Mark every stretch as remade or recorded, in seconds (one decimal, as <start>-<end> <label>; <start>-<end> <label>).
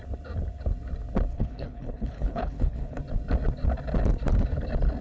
0.0-1.3 recorded; 1.3-3.0 remade; 3.0-5.0 recorded